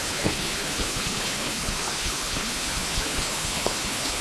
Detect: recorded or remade remade